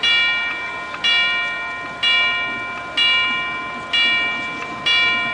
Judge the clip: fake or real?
real